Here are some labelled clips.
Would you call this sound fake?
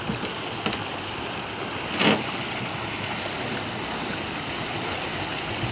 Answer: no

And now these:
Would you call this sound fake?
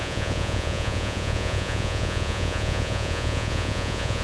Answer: yes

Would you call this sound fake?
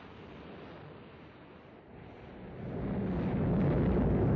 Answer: no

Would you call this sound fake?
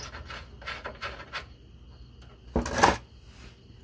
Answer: no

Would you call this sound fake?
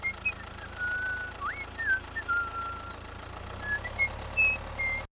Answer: no